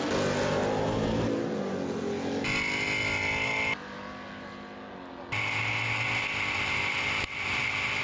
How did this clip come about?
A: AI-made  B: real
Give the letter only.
B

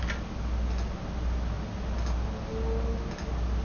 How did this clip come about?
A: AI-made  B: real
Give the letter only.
B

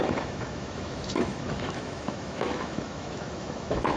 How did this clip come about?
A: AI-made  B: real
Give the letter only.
A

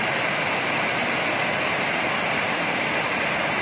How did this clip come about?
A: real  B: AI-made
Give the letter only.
B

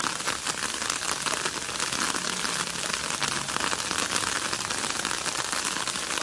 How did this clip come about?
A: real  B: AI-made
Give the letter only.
A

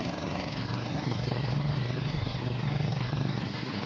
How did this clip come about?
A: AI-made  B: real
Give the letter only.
A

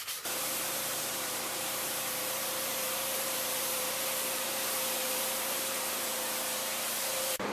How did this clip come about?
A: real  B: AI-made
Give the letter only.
B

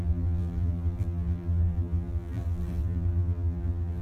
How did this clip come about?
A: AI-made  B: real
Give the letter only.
A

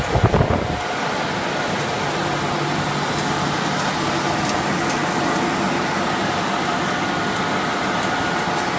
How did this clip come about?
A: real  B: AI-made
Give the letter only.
A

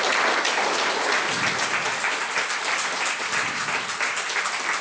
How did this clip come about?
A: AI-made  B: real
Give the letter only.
B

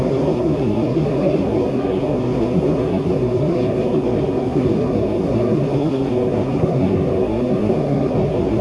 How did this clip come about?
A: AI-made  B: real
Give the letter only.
A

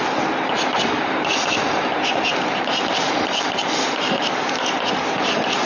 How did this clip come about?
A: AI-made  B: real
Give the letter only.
B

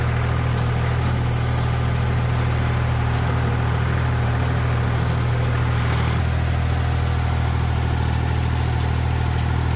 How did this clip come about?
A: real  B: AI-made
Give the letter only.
A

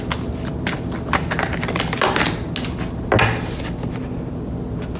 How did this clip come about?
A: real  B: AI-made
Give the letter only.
A